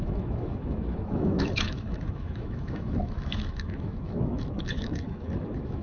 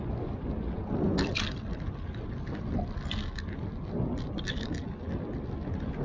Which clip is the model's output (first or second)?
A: first